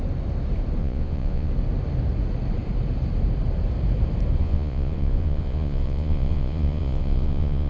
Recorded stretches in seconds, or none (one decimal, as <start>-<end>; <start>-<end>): 0.0-0.8; 1.5-4.4